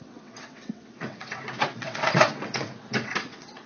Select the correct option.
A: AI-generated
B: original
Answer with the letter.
A